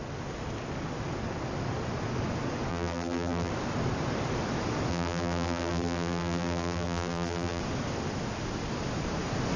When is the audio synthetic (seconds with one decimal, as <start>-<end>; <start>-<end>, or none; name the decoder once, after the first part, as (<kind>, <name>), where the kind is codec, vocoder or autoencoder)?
2.7-3.5 (vocoder, BigVGAN v2); 4.9-7.6